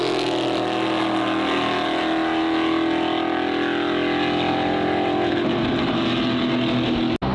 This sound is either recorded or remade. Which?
recorded